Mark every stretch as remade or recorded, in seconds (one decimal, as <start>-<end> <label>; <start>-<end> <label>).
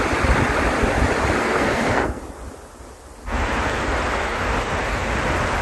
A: 0.0-1.4 recorded; 1.4-2.2 remade; 2.2-5.6 recorded